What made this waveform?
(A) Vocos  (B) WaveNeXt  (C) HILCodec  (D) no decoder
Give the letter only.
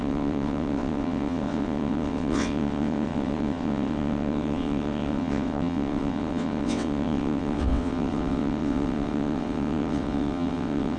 B